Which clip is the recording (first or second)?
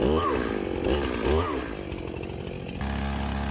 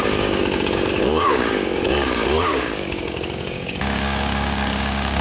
first